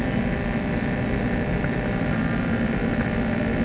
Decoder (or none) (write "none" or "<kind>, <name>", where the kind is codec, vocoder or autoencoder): none